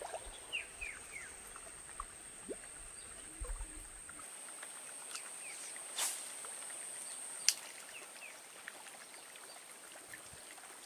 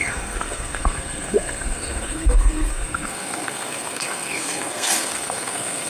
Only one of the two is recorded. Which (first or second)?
first